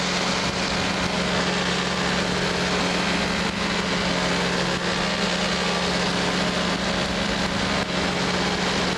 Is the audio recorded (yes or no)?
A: yes